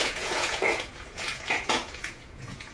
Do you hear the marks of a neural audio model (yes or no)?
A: yes